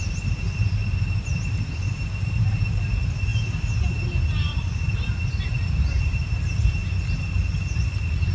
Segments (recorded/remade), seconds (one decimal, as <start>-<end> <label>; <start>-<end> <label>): 0.0-0.8 remade; 0.8-1.5 recorded; 1.5-3.3 remade; 3.3-4.4 recorded; 4.4-6.8 remade; 6.8-8.3 recorded